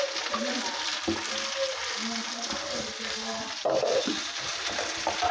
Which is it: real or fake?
real